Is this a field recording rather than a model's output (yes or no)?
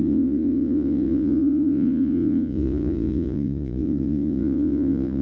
no